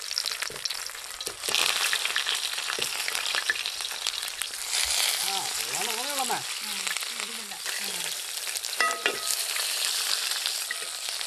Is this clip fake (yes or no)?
no